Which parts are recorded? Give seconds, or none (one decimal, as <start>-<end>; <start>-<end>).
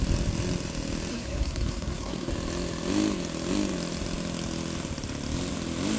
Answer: 0.0-1.1; 2.3-6.0